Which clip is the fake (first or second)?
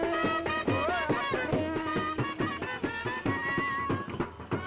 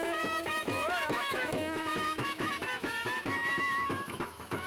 second